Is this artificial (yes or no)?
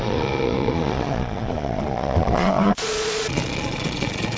yes